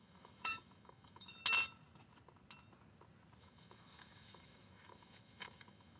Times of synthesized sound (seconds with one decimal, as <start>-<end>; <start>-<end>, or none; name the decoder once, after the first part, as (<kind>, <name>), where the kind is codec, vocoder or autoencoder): 0.0-1.3 (autoencoder, DAC-VAE); 3.4-6.0